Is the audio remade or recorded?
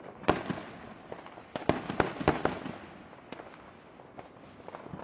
recorded